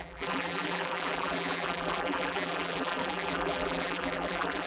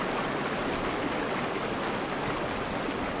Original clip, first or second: second